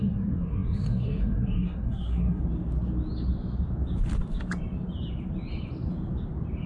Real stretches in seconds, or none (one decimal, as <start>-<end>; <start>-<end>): 2.4-6.7